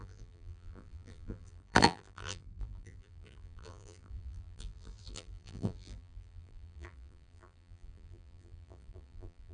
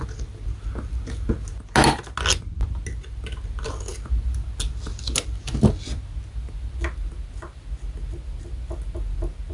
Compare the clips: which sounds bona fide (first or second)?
second